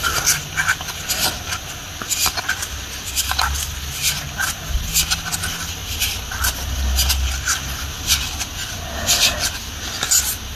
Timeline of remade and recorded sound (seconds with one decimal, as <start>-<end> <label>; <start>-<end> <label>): 0.0-10.6 recorded